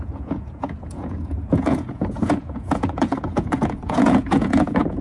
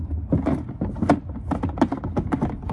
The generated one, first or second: first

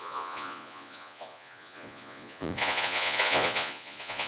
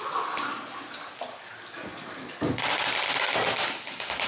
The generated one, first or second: first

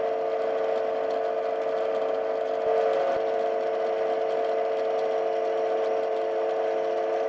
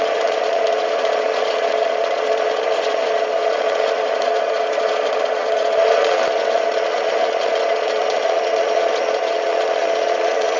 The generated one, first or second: second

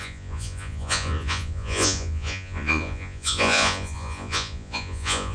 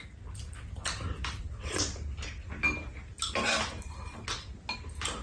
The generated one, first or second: first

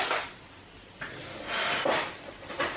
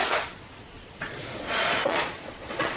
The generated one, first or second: second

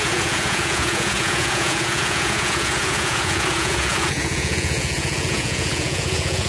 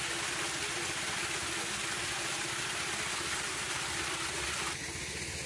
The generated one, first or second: first